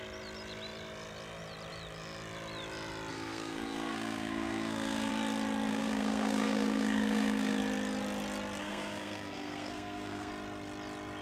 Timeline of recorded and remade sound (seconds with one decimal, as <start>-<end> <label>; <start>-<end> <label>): 0.0-3.1 recorded; 3.1-5.1 remade; 5.1-5.7 recorded; 5.7-7.6 remade; 7.6-8.6 recorded; 8.6-10.3 remade; 10.3-11.2 recorded